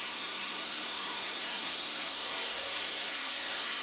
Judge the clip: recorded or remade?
remade